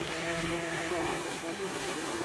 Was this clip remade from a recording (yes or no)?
yes